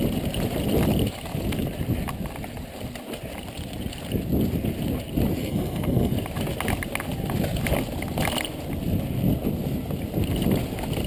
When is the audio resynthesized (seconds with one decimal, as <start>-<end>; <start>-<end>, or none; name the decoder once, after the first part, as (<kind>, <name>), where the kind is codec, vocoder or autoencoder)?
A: 5.4-6.1 (codec, SNAC)